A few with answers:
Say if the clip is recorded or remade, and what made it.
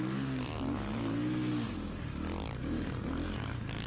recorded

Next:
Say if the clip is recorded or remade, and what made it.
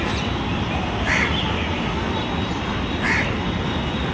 recorded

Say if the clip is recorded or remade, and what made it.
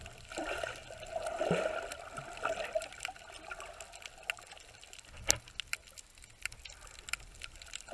recorded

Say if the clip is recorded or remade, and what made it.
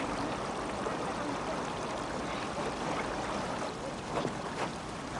recorded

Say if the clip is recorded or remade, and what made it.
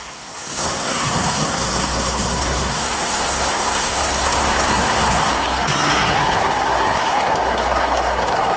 remade, codec, SNAC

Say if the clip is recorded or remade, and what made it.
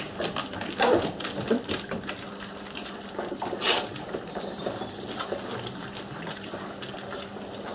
recorded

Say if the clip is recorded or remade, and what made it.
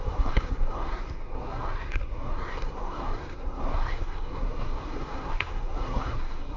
remade, codec, SNAC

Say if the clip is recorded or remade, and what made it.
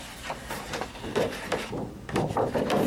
remade, vocoder, BigVGAN v2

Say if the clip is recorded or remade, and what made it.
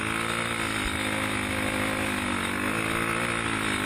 recorded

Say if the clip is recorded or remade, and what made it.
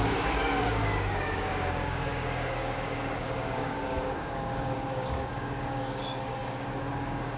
remade, codec, DAC